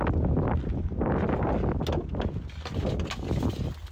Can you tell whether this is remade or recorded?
recorded